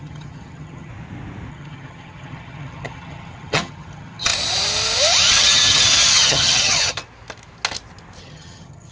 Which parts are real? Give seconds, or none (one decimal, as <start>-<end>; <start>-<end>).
0.9-1.5; 4.3-5.3; 7.0-8.2